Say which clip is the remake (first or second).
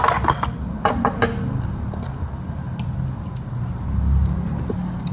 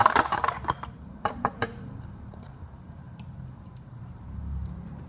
second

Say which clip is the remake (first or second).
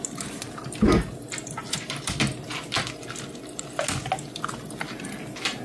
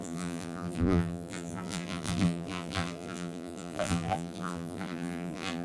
second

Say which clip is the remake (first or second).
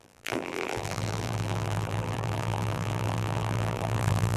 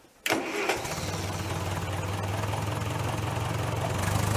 first